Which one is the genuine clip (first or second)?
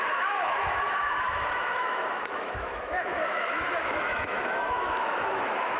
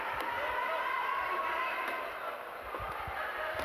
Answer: second